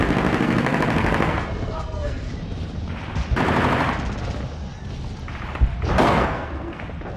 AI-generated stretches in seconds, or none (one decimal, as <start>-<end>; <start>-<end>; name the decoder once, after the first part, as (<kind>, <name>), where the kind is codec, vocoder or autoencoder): 0.0-2.3 (codec, SNAC); 6.0-6.8